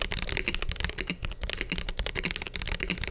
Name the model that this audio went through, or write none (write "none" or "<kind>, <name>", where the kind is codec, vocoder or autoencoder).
none